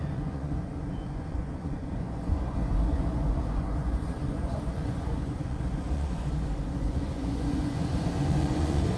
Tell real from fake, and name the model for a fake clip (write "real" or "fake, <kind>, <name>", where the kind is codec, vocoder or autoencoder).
fake, vocoder, Vocos